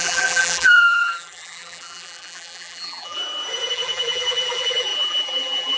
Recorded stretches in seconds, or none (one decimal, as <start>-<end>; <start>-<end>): 3.2-3.7